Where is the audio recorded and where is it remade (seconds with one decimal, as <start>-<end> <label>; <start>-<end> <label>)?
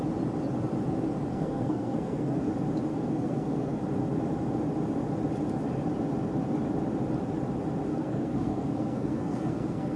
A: 0.0-1.3 recorded; 1.3-2.4 remade; 2.4-2.9 recorded; 2.9-3.8 remade; 3.8-7.9 recorded; 7.9-10.0 remade